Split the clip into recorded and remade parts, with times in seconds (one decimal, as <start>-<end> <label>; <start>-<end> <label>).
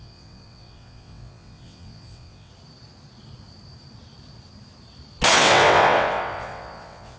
0.0-2.5 remade; 2.5-5.3 recorded; 5.3-7.2 remade